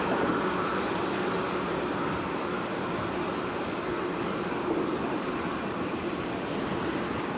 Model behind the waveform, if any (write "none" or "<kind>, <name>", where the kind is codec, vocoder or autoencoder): none